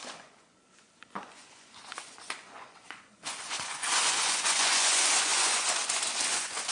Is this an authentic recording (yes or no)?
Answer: no